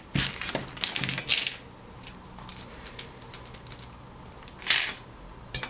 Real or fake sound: real